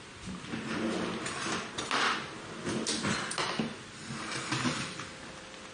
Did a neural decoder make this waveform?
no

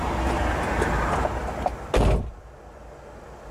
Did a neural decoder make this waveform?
no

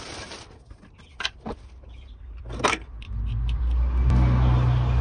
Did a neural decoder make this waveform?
no